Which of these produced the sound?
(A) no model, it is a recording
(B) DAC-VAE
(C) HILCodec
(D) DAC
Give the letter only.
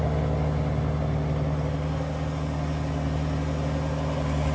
A